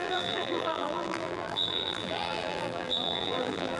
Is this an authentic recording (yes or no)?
no